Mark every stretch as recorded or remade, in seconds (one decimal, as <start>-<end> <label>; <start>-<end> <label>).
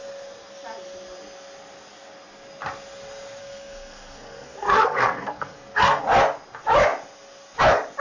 0.0-3.4 recorded; 3.4-6.0 remade; 6.0-8.0 recorded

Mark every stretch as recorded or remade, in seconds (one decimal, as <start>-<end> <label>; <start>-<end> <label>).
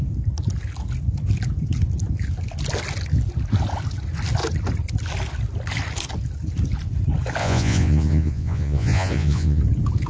0.0-7.4 recorded; 7.4-9.6 remade; 9.6-10.1 recorded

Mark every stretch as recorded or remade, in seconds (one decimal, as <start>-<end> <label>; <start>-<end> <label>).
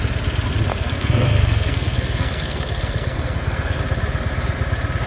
0.0-0.7 recorded; 0.7-3.8 remade; 3.8-5.1 recorded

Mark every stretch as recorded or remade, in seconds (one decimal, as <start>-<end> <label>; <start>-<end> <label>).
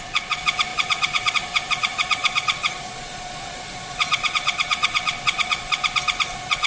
0.0-5.7 remade; 5.7-6.3 recorded; 6.3-6.7 remade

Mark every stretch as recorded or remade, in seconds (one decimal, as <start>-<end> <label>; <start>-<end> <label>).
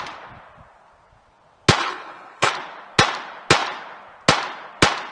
0.0-1.8 recorded; 1.8-2.5 remade; 2.5-5.1 recorded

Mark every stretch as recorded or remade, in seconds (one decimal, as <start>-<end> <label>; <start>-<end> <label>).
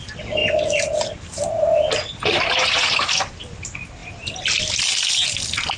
0.0-5.8 recorded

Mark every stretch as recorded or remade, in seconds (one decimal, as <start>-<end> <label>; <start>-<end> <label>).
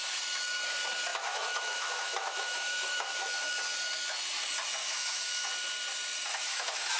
0.0-1.1 recorded; 1.1-3.5 remade; 3.5-4.8 recorded; 4.8-5.4 remade; 5.4-6.3 recorded; 6.3-7.0 remade